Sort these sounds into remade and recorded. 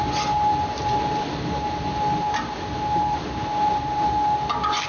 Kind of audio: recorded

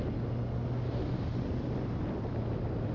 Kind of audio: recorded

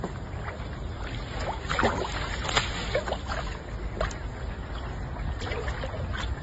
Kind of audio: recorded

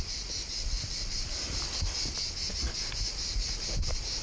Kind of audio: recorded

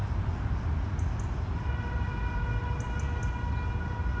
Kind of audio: recorded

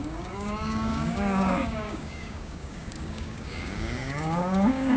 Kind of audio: remade